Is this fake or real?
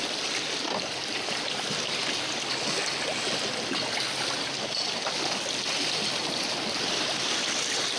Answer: real